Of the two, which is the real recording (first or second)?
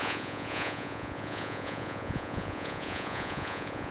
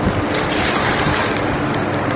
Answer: second